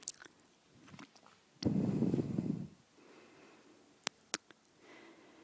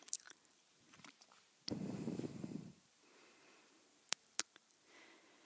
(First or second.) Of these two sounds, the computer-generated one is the second